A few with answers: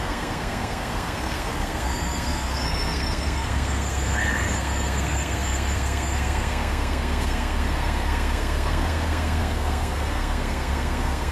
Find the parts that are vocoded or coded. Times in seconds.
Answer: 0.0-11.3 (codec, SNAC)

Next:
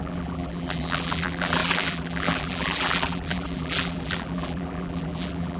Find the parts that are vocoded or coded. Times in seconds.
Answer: 0.0-5.6 (vocoder, BigVGAN v2)

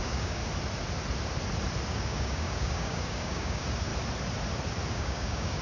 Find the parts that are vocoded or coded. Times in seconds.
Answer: 0.0-0.4 (codec, DAC); 1.9-3.9; 4.9-5.6

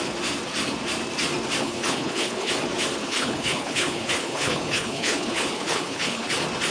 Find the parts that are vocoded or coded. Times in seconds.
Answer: 1.6-2.5 (codec, HILCodec); 3.0-6.3

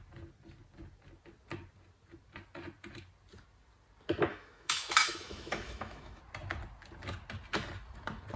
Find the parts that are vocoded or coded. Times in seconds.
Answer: 4.3-6.2 (autoencoder, DAC-VAE)

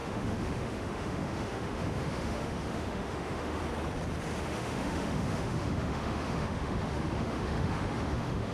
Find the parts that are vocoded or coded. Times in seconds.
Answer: 0.0-3.6 (autoencoder, DAC-VAE); 4.4-8.5

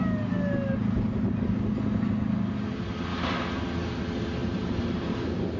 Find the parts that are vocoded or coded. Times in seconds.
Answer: none

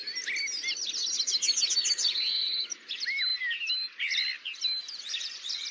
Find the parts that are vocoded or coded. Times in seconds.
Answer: 1.9-3.3 (vocoder, BigVGAN v2); 4.2-5.7